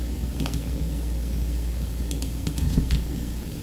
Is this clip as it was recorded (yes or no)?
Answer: no